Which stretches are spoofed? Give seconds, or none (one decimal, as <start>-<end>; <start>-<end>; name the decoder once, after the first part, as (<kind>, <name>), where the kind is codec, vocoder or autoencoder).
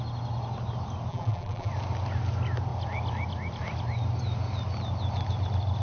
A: 1.1-1.7 (vocoder, BigVGAN v2)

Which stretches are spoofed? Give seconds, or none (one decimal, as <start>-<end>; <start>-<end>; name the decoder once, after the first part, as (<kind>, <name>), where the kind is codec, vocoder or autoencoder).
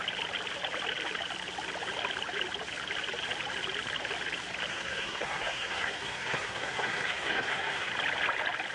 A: 4.7-7.9 (codec, SNAC)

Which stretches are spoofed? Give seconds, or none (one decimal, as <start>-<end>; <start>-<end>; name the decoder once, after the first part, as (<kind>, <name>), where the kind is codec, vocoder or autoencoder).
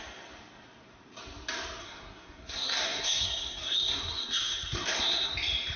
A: 1.8-5.3 (codec, SNAC)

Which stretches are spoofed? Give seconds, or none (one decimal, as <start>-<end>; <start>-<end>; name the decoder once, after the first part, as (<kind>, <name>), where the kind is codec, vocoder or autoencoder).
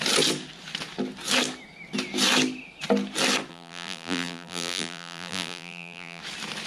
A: 3.5-6.2 (vocoder, BigVGAN v2)